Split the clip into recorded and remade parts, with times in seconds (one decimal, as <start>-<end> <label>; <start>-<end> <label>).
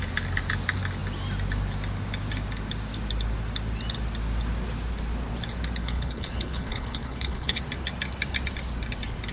0.0-5.8 recorded; 5.8-7.6 remade; 7.6-9.3 recorded